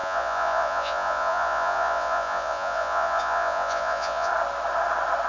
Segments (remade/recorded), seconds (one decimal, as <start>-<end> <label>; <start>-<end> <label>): 0.0-4.3 remade; 4.3-5.3 recorded

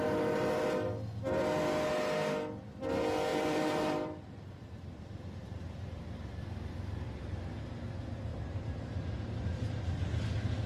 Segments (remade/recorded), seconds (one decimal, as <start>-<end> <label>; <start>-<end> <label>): 0.0-3.3 recorded; 3.3-7.7 remade; 7.7-8.3 recorded; 8.3-10.1 remade; 10.1-10.7 recorded

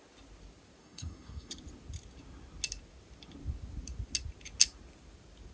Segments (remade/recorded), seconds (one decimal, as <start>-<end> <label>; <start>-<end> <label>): 0.0-0.8 recorded; 0.8-1.5 remade; 1.5-5.5 recorded

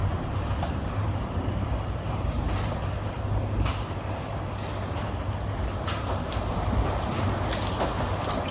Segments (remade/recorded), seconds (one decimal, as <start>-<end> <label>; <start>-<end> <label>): 0.0-4.4 remade; 4.4-8.5 recorded